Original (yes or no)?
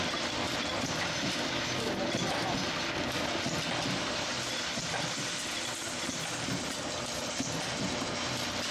yes